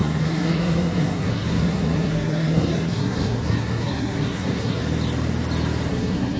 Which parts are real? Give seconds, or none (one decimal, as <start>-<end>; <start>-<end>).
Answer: 4.8-5.9